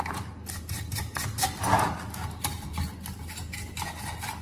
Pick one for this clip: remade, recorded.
recorded